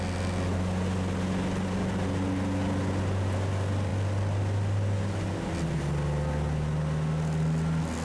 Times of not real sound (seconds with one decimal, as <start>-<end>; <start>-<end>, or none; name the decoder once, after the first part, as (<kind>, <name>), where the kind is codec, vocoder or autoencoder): none